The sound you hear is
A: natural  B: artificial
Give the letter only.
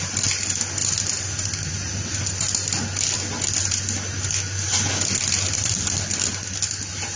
A